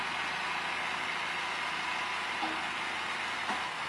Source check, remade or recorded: recorded